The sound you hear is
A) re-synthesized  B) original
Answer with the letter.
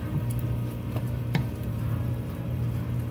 A